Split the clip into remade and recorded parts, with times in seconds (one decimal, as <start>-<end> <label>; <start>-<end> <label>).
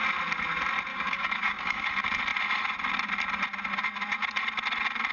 0.0-0.9 recorded; 0.9-1.9 remade; 1.9-5.1 recorded